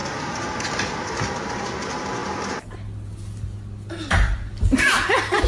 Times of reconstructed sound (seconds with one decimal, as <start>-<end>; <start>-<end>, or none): none